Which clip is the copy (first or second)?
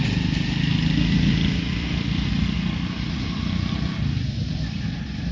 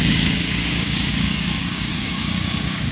second